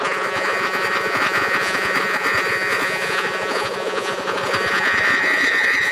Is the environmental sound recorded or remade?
remade